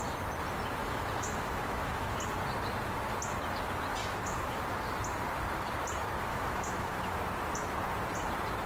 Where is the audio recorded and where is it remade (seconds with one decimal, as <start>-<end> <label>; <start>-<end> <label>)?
0.0-0.8 recorded; 0.8-2.2 remade; 2.2-4.0 recorded; 4.0-4.6 remade; 4.6-6.3 recorded; 6.3-7.2 remade; 7.2-8.7 recorded